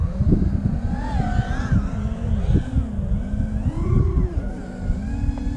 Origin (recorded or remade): recorded